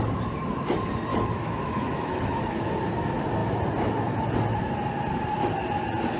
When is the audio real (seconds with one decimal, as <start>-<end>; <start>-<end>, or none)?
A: 0.0-1.1; 2.7-6.2